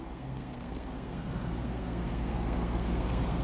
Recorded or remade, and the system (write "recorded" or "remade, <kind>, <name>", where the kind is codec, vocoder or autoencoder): remade, codec, SNAC